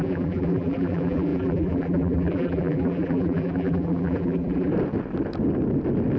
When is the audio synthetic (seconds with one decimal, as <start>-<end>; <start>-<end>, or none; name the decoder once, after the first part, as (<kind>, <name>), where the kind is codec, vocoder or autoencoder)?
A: 0.0-4.7 (vocoder, BigVGAN v2)